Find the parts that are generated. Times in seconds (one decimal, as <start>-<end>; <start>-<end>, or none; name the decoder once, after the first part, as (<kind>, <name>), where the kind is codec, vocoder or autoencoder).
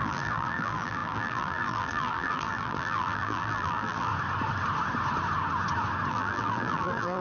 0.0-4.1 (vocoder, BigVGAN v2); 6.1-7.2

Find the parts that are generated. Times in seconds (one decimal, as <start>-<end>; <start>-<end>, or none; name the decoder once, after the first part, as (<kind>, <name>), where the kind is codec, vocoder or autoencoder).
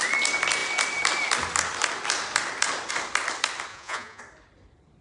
3.7-4.2 (vocoder, Vocos)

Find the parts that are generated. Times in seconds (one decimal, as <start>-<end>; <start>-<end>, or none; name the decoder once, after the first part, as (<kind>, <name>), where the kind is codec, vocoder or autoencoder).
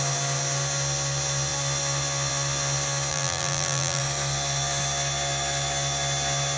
3.1-4.0 (vocoder, BigVGAN v2)